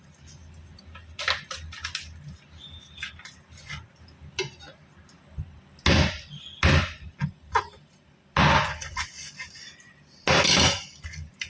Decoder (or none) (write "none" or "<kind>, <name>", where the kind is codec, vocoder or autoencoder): none